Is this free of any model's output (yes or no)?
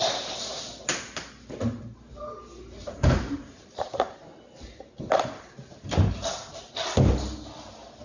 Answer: yes